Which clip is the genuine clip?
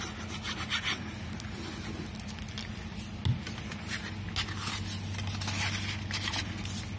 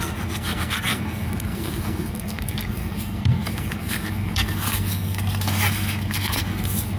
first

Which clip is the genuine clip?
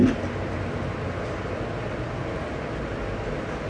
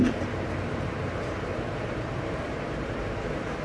first